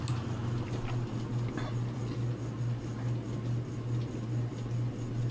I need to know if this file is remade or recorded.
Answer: recorded